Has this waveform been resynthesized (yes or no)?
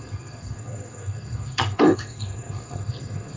yes